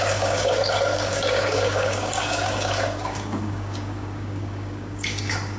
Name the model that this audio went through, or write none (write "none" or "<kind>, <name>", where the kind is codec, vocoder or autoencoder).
codec, DAC